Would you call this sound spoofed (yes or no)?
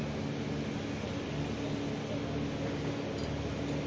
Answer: no